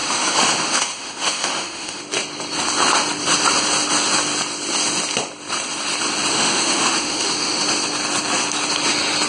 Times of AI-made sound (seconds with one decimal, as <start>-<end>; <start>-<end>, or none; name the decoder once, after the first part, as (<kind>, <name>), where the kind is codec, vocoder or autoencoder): 0.0-2.0 (autoencoder, DAC-VAE); 6.3-7.6